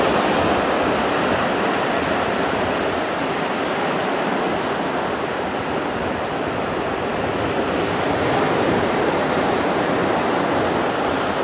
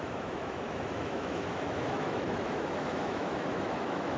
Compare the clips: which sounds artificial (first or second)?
second